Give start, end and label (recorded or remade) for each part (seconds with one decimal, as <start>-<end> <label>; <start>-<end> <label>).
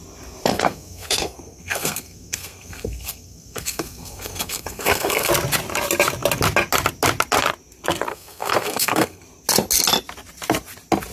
0.0-0.5 recorded; 0.5-5.3 remade; 5.3-8.1 recorded; 8.1-9.2 remade; 9.2-11.1 recorded